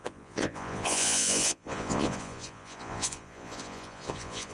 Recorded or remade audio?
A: remade